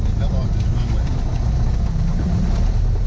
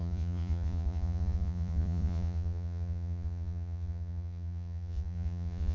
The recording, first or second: first